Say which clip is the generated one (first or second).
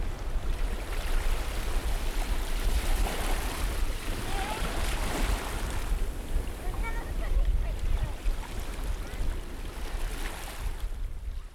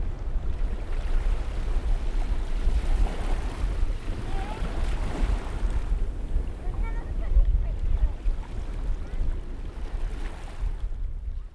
first